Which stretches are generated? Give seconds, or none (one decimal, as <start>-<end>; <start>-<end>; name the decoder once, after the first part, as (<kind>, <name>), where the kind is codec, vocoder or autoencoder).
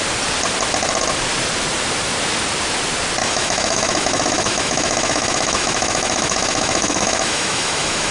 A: 3.2-8.1 (autoencoder, DAC-VAE)